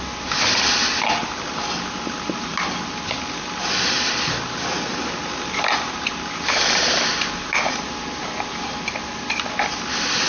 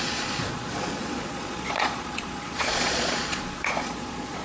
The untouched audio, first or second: first